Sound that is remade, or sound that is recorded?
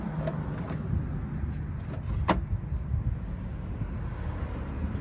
recorded